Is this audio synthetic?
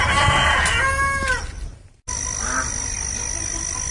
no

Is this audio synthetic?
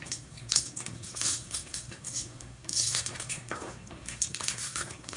yes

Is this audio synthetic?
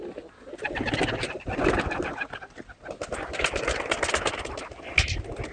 no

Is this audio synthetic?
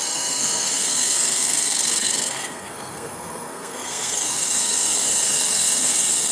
yes